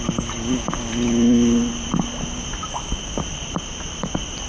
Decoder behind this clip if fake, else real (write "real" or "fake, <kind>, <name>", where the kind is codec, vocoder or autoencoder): real